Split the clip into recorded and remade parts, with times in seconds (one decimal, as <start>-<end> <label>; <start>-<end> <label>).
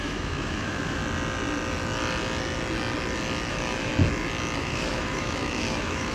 0.0-1.0 remade; 1.0-3.5 recorded; 3.5-3.9 remade; 3.9-4.6 recorded; 4.6-6.1 remade